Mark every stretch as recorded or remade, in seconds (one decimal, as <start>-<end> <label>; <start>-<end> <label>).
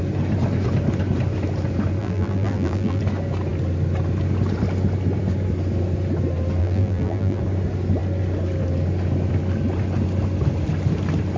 0.0-2.0 recorded; 2.0-3.0 remade; 3.0-6.6 recorded; 6.6-7.4 remade; 7.4-11.4 recorded